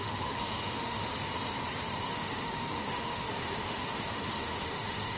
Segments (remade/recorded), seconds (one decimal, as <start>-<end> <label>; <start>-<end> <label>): 0.0-1.1 remade; 1.1-2.1 recorded; 2.1-5.2 remade